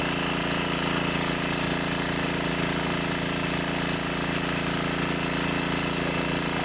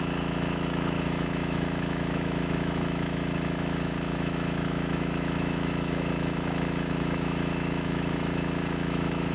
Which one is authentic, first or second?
first